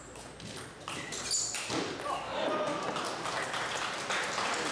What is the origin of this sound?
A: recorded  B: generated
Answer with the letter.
A